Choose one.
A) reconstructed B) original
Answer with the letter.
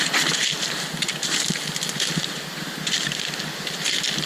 B